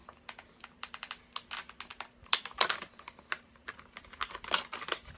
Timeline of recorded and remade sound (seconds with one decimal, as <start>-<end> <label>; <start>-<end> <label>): 0.0-1.1 remade; 1.1-1.9 recorded; 1.9-4.6 remade; 4.6-5.2 recorded